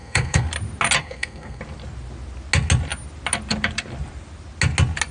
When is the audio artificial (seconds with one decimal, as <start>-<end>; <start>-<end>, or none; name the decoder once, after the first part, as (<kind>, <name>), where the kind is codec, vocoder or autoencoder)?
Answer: 0.0-0.5 (codec, SNAC); 1.0-1.6